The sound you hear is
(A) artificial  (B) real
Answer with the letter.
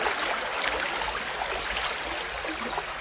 B